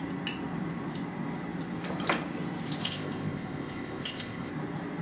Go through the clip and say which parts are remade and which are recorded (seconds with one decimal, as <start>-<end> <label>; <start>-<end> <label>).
0.0-2.8 recorded; 2.8-4.5 remade; 4.5-5.0 recorded